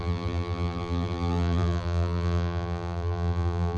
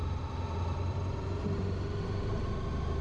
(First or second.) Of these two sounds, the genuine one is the second